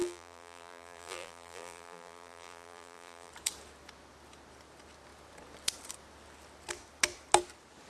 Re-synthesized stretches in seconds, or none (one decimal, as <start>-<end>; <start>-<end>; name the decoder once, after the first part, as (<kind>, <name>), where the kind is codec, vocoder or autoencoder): 0.0-3.3 (vocoder, BigVGAN v2)